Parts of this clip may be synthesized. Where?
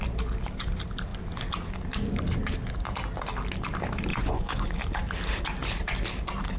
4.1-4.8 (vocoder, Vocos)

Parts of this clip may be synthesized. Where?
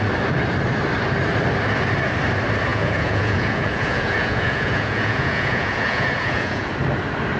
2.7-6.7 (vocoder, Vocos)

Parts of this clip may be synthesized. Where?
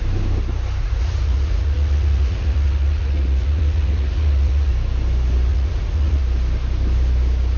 0.8-4.7 (vocoder, Vocos); 5.5-6.2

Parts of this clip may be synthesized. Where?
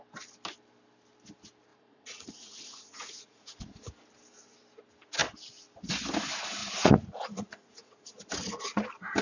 1.7-3.9 (vocoder, Vocos); 6.6-8.3